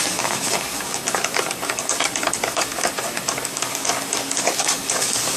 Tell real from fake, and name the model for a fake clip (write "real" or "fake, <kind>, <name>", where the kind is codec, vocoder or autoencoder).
fake, codec, DAC